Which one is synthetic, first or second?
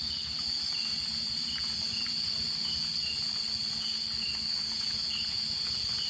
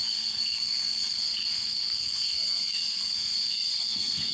second